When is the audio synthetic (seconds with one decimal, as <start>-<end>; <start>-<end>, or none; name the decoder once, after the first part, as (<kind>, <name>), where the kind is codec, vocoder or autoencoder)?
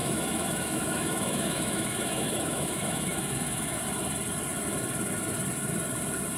0.0-3.8 (autoencoder, DAC-VAE)